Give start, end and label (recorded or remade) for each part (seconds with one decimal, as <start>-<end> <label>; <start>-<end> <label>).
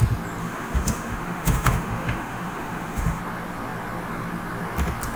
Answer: 0.0-0.4 recorded; 0.4-3.2 remade; 3.2-5.2 recorded